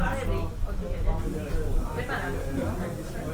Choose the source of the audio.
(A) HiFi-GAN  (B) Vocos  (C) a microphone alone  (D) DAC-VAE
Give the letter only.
C